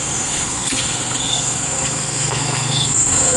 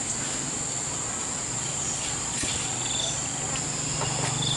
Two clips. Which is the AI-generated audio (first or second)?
first